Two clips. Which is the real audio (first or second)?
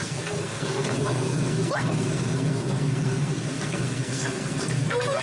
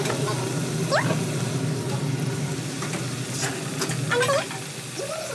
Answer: second